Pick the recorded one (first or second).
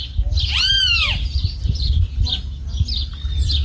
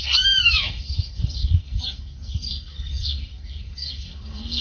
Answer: first